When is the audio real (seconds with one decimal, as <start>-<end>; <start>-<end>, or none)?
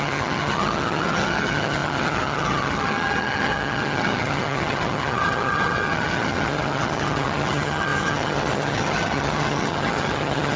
none